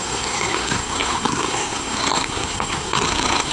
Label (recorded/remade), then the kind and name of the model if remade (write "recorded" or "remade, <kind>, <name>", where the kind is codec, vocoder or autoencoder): remade, codec, SNAC